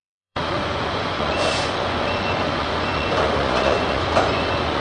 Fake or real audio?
fake